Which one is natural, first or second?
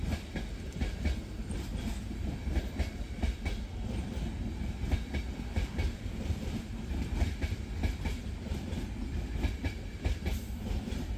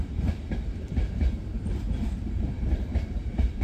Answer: first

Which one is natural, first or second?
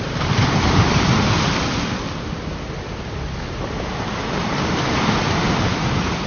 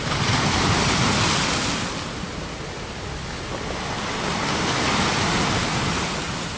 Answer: second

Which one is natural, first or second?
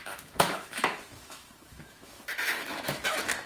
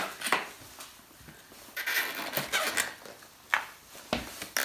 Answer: second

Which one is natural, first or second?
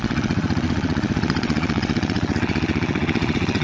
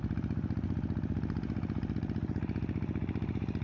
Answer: second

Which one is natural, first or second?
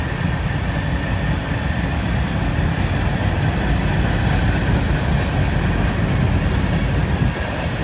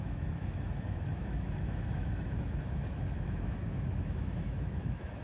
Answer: first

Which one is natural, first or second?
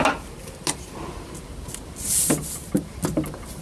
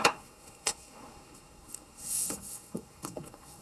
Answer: first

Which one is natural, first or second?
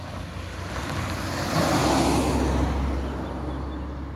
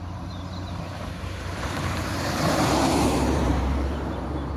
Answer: first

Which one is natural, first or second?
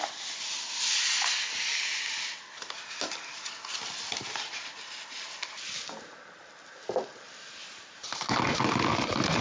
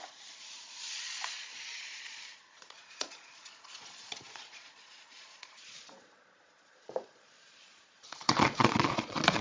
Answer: first